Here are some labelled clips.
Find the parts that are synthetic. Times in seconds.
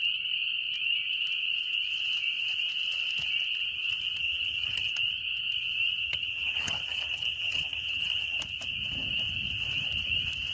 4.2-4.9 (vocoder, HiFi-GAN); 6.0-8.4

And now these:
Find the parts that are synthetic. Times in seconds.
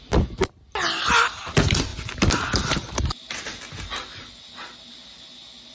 none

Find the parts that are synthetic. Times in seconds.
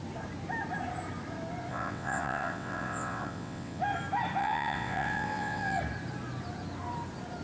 1.7-3.8 (vocoder, WaveNeXt); 4.4-5.8